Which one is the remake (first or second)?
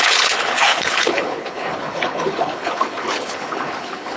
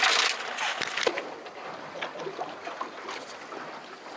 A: first